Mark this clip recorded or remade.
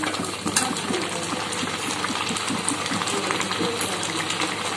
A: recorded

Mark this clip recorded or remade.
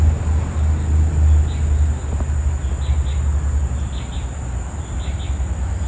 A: recorded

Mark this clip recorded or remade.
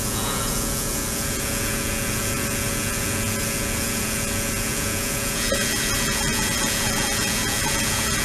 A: remade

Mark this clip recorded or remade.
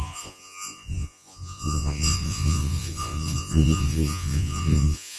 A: remade